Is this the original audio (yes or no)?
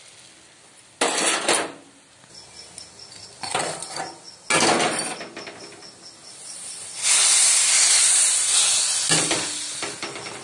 yes